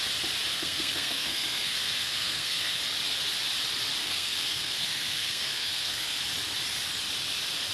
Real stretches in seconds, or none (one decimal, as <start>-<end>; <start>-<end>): 0.0-0.5; 2.8-4.0; 6.2-7.7